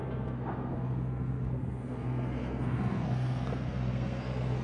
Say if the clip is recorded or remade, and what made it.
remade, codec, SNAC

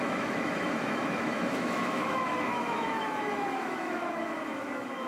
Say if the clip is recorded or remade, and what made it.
remade, autoencoder, DAC-VAE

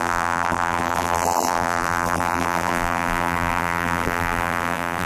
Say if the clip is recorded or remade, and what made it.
remade, vocoder, BigVGAN v2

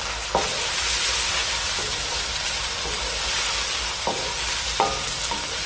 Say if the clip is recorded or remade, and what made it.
recorded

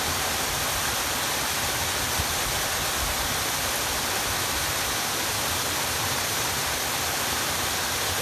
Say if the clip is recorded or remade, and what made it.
recorded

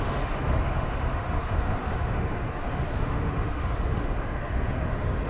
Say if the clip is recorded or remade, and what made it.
remade, autoencoder, DAC-VAE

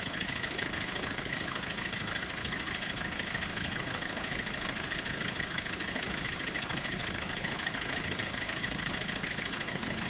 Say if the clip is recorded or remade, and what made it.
remade, codec, HILCodec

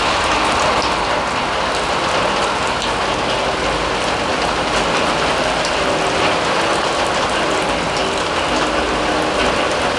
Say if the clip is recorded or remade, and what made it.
recorded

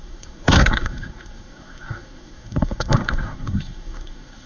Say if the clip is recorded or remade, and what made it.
remade, codec, SNAC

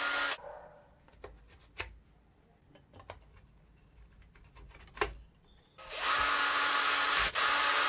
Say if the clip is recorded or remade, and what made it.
recorded